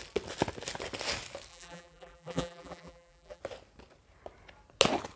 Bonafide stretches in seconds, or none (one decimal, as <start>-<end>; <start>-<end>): 0.0-1.5; 3.4-5.2